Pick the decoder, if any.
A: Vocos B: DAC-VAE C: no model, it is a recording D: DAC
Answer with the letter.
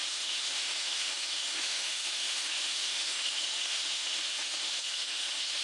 B